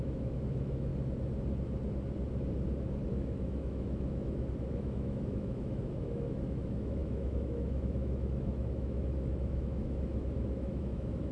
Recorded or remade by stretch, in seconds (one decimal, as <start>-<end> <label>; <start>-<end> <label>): 0.0-0.9 remade; 0.9-3.1 recorded; 3.1-11.3 remade